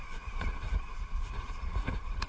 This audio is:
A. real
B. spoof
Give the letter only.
B